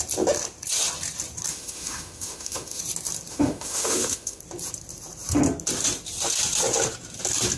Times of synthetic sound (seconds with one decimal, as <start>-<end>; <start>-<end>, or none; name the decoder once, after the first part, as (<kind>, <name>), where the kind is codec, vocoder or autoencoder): 1.5-2.8 (autoencoder, DAC-VAE); 3.3-4.4